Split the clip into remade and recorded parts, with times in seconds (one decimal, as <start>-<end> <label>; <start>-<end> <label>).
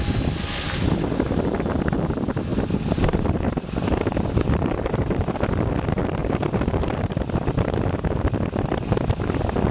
0.0-2.5 recorded; 2.5-5.3 remade; 5.3-6.2 recorded; 6.2-7.0 remade; 7.0-9.7 recorded